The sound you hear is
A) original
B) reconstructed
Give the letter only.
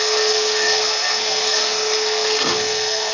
B